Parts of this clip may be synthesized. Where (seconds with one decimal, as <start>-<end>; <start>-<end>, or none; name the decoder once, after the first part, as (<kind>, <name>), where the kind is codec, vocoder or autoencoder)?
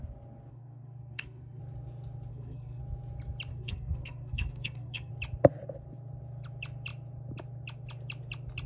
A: 0.5-1.6 (codec, SNAC); 2.3-2.8; 3.5-5.1